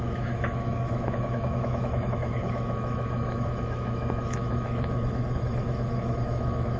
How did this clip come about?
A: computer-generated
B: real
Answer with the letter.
A